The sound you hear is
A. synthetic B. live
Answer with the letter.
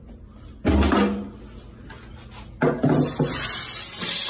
B